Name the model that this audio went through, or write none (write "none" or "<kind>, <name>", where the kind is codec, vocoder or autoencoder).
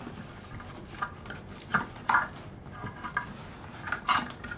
none